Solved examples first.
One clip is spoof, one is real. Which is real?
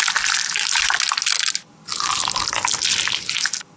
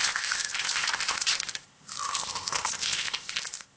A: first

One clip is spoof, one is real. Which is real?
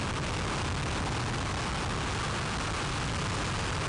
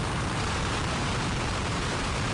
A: first